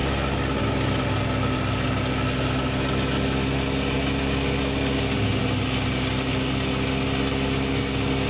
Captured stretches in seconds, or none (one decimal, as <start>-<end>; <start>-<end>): 0.0-8.3